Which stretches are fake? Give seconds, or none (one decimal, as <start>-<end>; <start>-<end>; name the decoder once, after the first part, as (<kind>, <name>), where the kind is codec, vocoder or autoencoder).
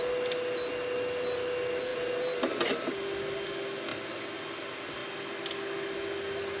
none